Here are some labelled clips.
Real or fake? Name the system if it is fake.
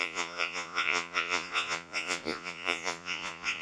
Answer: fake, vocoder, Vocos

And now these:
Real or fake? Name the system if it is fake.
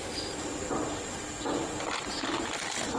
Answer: real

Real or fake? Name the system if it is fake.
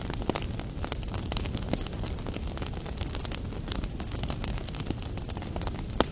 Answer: real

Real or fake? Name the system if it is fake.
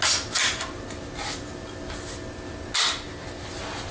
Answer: real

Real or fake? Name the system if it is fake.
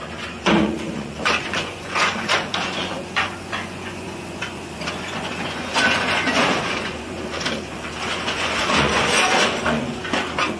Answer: fake, vocoder, Vocos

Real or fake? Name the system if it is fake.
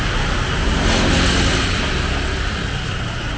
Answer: real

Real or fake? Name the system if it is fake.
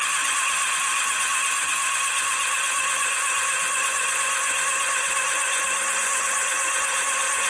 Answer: fake, vocoder, Vocos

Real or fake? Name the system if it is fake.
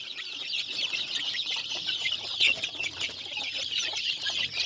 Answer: fake, vocoder, Vocos